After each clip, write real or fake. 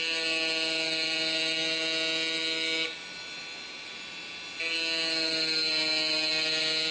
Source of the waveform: real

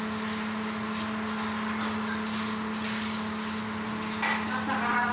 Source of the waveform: real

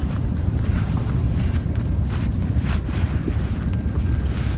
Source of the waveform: real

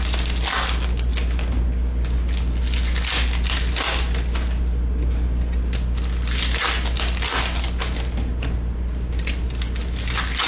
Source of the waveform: real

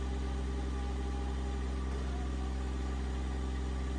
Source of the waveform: real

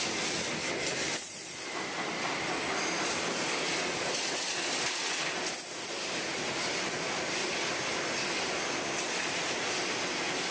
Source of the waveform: real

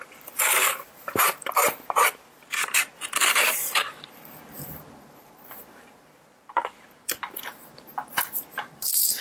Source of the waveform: fake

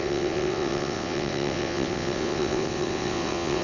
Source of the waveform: fake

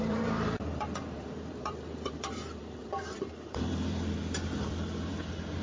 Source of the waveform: fake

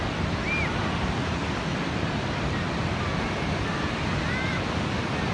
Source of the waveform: real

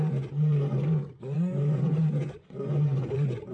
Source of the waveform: fake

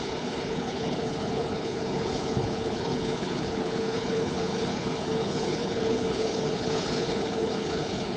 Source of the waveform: fake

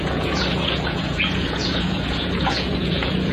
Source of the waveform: fake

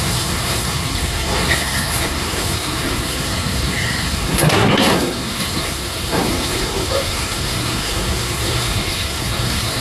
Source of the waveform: fake